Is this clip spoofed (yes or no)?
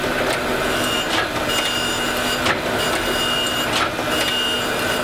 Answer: no